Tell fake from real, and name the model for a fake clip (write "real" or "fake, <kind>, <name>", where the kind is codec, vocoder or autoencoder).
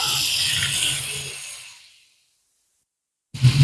real